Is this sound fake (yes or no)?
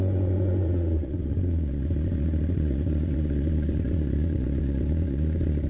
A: yes